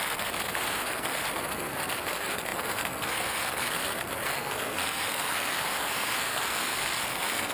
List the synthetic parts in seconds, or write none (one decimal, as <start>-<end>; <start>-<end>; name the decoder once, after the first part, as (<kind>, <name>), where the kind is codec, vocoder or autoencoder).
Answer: 0.0-7.5 (codec, SNAC)